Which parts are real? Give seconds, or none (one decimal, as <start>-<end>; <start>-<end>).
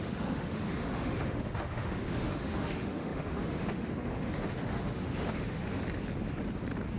5.8-7.0